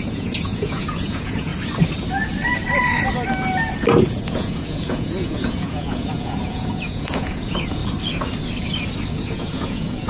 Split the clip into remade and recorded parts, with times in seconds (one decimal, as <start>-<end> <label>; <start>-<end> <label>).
0.0-1.5 remade; 1.5-4.0 recorded; 4.0-7.8 remade; 7.8-9.1 recorded; 9.1-10.1 remade